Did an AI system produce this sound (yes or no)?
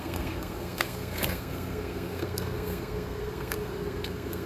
yes